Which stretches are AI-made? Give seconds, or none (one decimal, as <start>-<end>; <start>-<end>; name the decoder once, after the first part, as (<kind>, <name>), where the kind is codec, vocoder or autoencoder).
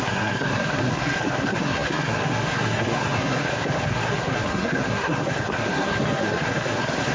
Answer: 0.0-7.1 (codec, SNAC)